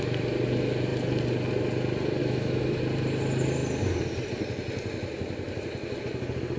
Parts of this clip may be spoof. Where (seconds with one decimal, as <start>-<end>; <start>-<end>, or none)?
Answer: 2.2-2.8